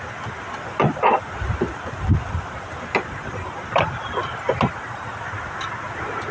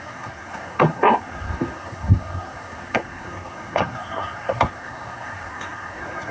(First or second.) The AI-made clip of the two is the second